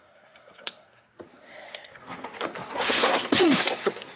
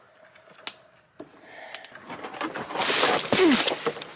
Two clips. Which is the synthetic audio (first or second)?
first